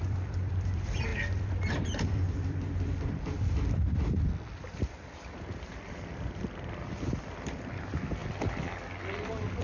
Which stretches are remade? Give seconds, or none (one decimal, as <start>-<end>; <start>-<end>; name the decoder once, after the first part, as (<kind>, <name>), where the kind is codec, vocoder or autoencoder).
0.0-8.2 (vocoder, BigVGAN v2)